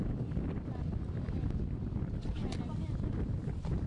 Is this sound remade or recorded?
remade